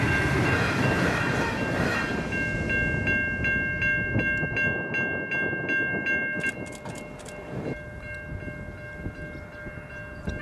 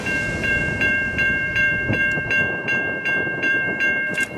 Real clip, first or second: first